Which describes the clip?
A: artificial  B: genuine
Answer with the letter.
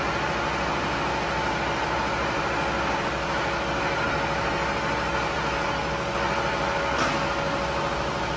B